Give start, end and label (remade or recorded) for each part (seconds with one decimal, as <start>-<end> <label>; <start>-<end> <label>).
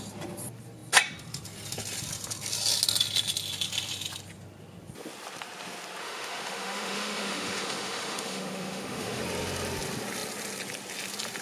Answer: 0.0-6.0 recorded; 6.0-9.2 remade; 9.2-11.4 recorded